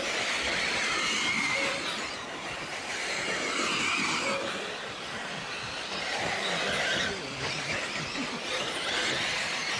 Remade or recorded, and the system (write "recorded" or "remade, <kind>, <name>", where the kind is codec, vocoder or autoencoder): recorded